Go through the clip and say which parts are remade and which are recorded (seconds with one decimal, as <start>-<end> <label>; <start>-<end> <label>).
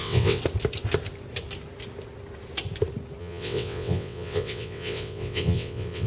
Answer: 0.0-0.4 remade; 0.4-3.2 recorded; 3.2-6.1 remade